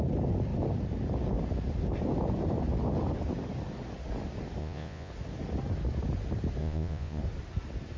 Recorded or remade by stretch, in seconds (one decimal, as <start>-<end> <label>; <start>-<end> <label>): 0.0-4.6 recorded; 4.6-5.1 remade; 5.1-6.6 recorded; 6.6-7.2 remade; 7.2-8.0 recorded